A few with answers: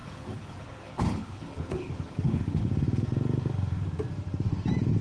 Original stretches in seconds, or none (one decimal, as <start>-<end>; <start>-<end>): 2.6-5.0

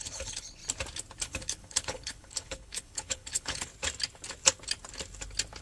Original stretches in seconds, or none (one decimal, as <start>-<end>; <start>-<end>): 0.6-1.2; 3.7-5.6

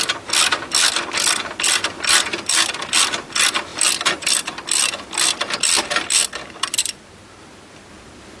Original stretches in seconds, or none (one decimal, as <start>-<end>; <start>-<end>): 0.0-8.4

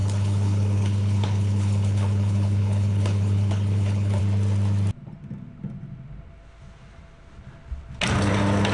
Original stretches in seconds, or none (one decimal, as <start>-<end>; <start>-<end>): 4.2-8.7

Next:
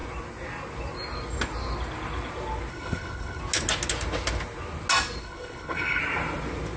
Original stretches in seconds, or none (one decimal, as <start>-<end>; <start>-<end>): 0.0-2.7; 3.4-5.2; 6.0-6.8

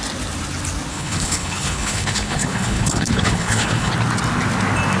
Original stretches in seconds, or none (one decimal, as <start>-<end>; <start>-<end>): 0.0-0.9; 3.9-5.0

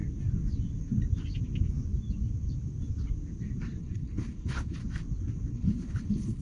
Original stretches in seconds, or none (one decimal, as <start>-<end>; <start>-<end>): 0.0-3.8; 4.8-5.5

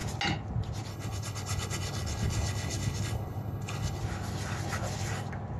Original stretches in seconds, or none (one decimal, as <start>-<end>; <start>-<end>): 0.0-0.9; 4.0-5.6